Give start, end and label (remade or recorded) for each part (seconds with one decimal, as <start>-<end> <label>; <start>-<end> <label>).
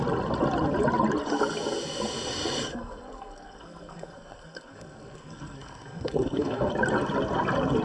0.0-2.7 recorded; 2.7-6.7 remade; 6.7-7.8 recorded